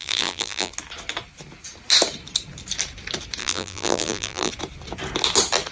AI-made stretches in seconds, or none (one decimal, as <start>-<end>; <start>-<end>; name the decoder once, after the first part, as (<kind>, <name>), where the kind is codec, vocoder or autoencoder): 0.0-0.7 (vocoder, BigVGAN v2); 3.4-4.5